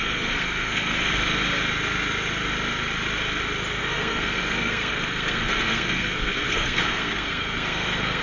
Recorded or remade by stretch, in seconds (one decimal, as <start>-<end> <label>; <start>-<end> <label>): 0.0-1.1 remade; 1.1-3.8 recorded; 3.8-8.2 remade